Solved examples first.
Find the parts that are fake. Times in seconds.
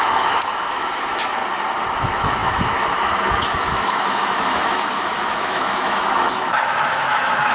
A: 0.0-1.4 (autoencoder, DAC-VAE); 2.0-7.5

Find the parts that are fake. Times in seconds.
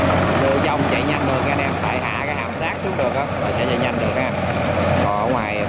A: none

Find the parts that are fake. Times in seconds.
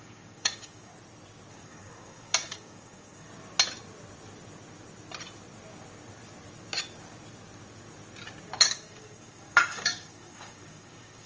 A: 0.0-0.9 (codec, DAC); 1.5-3.3; 8.6-11.3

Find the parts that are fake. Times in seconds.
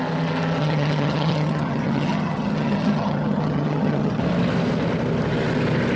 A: 0.6-4.2 (vocoder, HiFi-GAN)